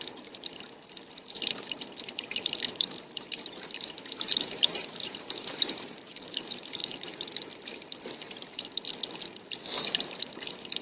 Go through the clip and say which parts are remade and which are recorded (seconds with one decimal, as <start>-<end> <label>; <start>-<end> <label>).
0.0-6.8 remade; 6.8-9.8 recorded; 9.8-10.8 remade